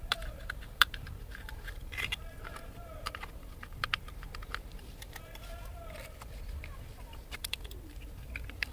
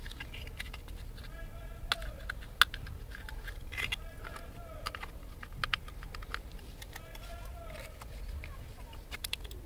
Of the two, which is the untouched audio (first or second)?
second